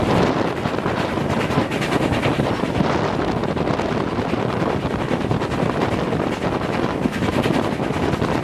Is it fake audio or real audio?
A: real